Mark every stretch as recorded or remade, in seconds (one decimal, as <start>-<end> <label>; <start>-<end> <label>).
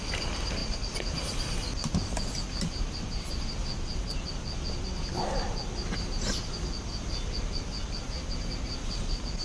0.0-9.4 recorded